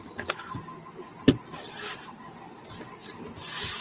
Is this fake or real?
real